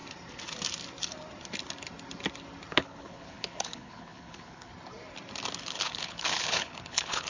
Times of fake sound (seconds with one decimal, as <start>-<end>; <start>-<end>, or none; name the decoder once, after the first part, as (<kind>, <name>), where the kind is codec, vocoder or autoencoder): 2.7-4.7 (codec, HILCodec); 5.6-7.3